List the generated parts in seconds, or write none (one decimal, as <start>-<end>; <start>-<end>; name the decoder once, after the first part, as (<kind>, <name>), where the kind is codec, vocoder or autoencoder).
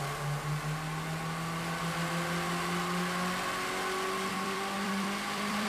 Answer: 4.3-5.7 (vocoder, BigVGAN v2)